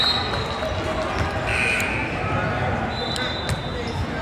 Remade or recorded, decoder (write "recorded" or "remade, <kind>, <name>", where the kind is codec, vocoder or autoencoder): recorded